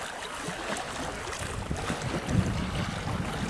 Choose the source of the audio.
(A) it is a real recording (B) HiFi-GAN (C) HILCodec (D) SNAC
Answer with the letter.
A